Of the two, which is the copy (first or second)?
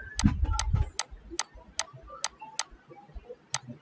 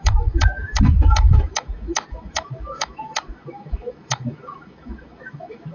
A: second